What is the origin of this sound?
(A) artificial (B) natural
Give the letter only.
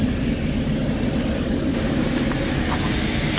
B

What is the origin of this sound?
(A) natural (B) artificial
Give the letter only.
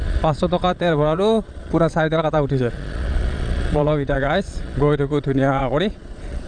B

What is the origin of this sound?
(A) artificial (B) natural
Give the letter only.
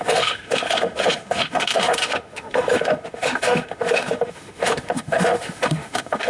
A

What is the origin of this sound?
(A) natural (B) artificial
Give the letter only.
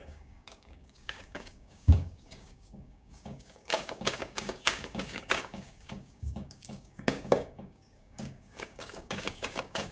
B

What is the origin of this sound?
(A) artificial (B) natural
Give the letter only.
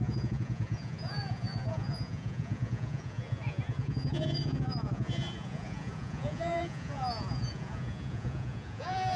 A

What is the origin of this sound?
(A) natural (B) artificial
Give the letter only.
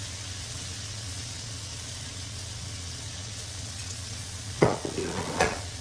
B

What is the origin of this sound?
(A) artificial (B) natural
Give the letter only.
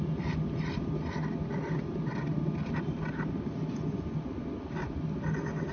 B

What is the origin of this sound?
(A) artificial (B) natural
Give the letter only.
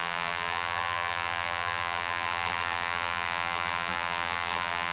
A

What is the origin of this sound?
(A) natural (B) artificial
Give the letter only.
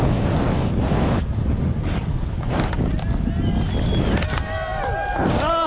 A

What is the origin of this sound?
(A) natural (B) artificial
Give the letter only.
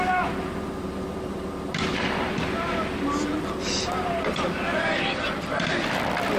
B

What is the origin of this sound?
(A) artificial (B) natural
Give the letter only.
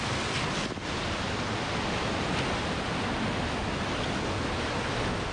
B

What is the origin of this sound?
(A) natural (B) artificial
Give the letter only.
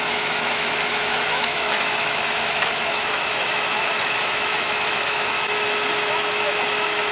B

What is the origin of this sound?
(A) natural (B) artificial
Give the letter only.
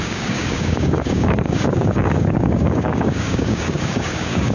B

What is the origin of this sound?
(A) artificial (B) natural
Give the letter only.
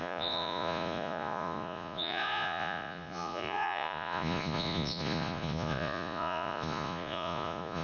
A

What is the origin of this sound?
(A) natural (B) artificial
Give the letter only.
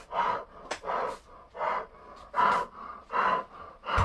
A